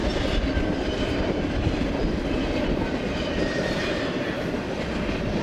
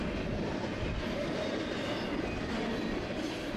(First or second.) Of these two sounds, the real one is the second